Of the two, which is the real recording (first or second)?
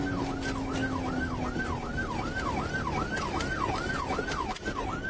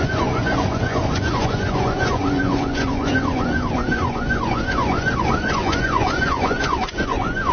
first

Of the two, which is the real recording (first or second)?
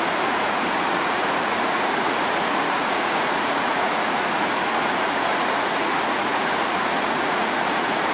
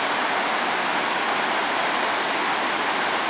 second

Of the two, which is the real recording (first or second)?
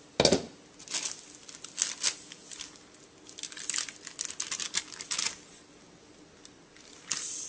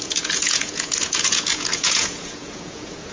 first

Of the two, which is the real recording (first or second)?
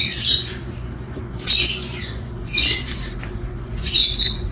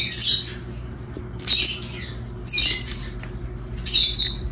second